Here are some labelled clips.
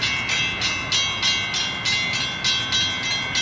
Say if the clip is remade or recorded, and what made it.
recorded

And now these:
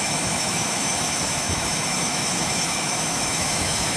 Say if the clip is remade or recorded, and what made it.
remade, autoencoder, DAC-VAE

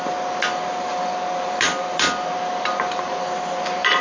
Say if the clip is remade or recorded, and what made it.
recorded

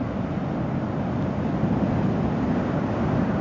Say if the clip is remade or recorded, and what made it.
recorded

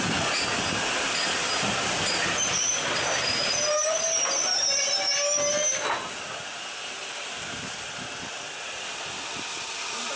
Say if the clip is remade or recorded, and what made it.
recorded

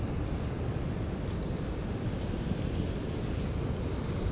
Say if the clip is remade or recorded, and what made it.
recorded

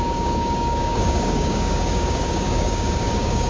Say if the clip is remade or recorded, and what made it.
remade, codec, DAC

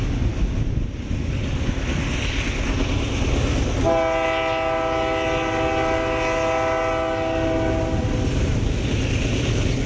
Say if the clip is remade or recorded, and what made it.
recorded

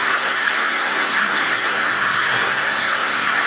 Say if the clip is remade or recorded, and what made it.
remade, codec, SNAC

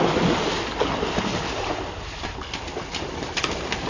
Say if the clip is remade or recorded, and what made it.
recorded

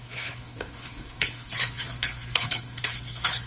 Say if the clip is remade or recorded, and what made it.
remade, codec, HILCodec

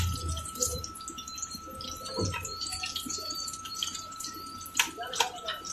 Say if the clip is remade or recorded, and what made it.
recorded